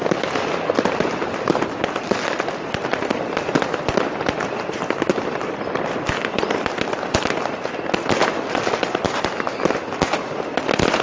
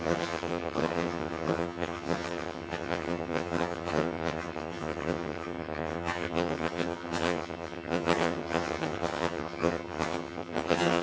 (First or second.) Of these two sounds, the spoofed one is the second